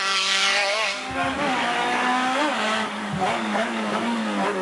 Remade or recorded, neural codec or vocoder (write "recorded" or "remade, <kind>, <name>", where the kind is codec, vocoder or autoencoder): remade, codec, DAC